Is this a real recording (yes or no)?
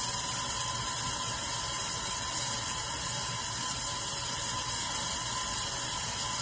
yes